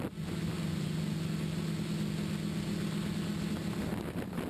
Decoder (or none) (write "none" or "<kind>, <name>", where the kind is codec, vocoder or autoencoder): none